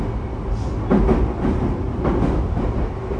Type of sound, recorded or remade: recorded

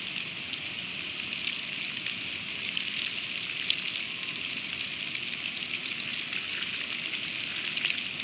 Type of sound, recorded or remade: recorded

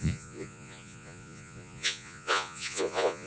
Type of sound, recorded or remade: remade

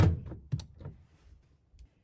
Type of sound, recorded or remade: recorded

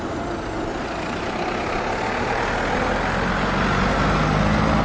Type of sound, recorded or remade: recorded